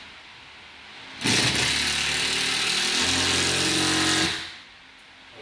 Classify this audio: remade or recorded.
recorded